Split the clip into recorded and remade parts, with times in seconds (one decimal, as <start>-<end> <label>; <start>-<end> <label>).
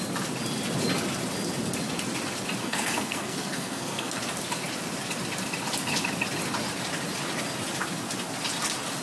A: 0.0-2.6 recorded; 2.6-4.2 remade; 4.2-9.0 recorded